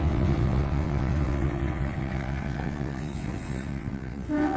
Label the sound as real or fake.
fake